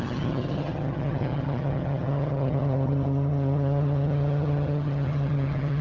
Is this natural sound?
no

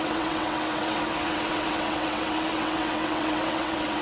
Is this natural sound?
no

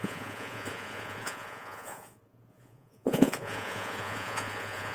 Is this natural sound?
no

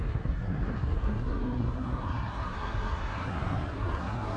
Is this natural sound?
no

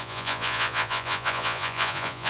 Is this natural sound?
no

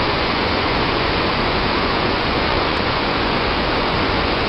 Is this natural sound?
no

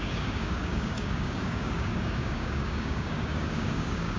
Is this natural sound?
no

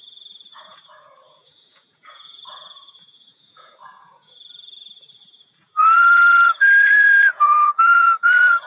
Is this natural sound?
no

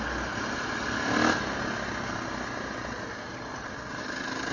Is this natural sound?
yes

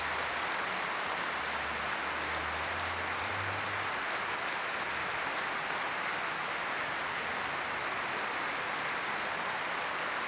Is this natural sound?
yes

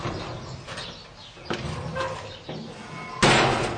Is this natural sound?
yes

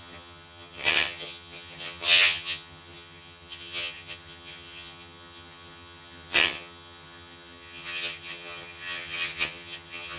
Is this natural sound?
no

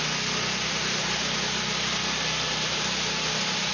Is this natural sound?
yes